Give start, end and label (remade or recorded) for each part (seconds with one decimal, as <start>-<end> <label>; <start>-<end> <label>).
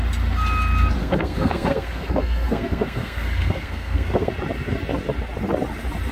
0.0-1.0 recorded; 1.0-4.3 remade; 4.3-6.1 recorded